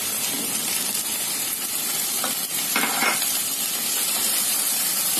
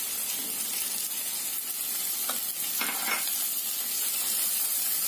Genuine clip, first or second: second